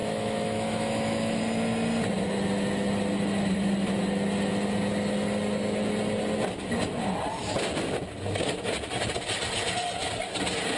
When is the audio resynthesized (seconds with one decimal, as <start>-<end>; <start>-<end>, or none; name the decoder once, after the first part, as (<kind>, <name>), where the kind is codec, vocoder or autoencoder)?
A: 0.0-1.4 (autoencoder, DAC-VAE)